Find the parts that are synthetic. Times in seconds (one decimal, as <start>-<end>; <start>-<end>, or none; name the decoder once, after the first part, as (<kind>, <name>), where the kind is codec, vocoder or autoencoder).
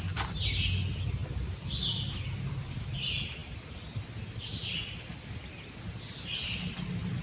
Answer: none